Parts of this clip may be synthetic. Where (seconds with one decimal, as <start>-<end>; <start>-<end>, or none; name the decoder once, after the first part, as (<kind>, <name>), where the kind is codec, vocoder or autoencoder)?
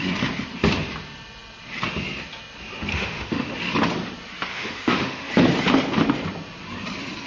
2.9-3.5 (autoencoder, DAC-VAE); 4.5-5.3